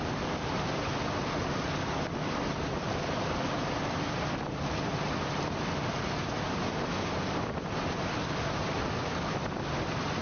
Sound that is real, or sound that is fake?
fake